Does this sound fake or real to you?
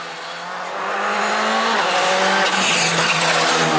real